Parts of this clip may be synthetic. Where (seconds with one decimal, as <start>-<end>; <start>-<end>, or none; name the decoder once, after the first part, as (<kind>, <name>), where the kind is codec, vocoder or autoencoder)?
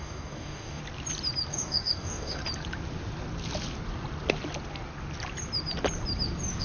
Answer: 0.0-0.8 (codec, DAC); 1.5-2.4